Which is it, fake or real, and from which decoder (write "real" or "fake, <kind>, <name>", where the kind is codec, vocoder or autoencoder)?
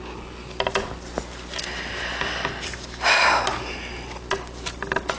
real